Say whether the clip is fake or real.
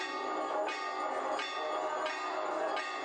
real